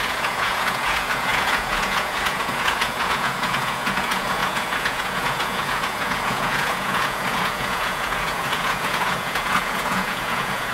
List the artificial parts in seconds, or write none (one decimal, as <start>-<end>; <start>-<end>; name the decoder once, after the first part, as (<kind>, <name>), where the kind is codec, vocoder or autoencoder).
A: 0.0-10.7 (vocoder, Vocos)